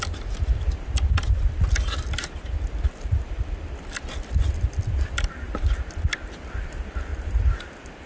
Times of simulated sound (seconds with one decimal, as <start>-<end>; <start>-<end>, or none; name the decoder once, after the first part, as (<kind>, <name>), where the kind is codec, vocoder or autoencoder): none